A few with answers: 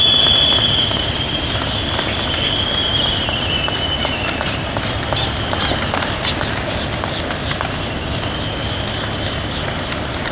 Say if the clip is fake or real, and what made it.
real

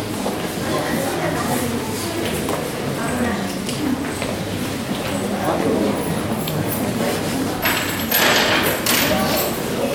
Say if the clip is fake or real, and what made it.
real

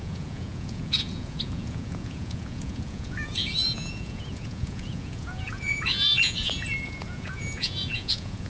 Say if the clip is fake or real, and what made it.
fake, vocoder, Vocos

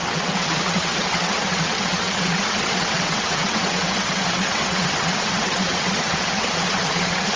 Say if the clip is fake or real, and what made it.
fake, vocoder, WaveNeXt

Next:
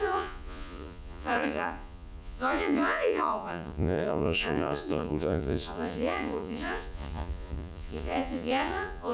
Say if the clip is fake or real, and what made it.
fake, vocoder, Vocos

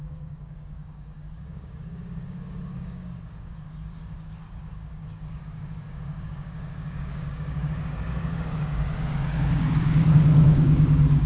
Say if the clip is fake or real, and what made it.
fake, codec, DAC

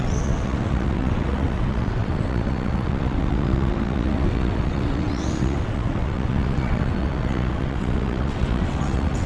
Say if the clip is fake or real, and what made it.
fake, vocoder, WaveNeXt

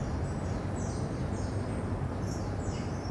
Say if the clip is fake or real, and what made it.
fake, vocoder, BigVGAN v2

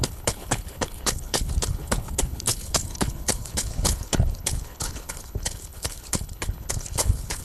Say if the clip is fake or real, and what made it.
fake, codec, HILCodec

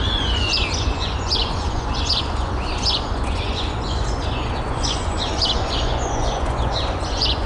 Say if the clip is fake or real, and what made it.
fake, vocoder, Vocos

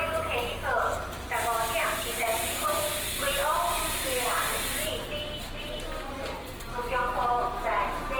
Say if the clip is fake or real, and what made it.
real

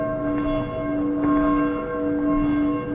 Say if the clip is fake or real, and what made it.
real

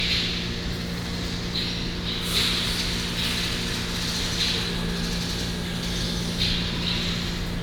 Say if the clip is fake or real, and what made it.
real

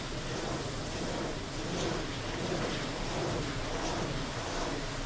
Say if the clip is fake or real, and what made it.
real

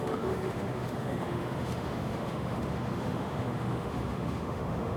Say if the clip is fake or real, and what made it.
fake, autoencoder, DAC-VAE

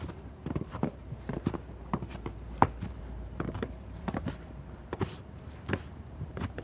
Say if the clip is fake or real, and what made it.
fake, vocoder, BigVGAN v2